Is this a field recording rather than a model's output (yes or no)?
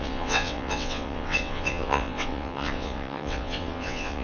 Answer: no